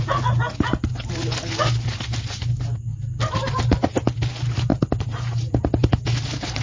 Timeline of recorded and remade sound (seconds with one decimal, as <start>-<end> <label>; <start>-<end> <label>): 0.0-6.6 recorded